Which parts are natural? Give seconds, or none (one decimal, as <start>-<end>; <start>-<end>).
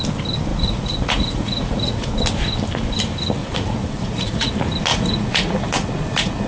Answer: 0.0-0.5; 2.1-3.4; 4.5-4.9